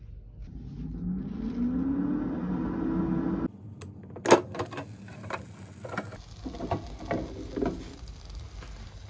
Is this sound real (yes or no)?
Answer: yes